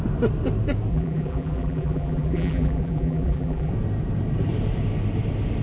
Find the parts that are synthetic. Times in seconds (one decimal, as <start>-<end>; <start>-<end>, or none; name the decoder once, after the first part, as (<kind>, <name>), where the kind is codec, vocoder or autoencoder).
0.9-3.7 (vocoder, BigVGAN v2)